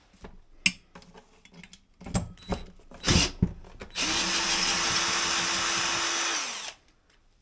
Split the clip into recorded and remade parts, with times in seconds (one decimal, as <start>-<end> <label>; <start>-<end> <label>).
0.0-7.4 recorded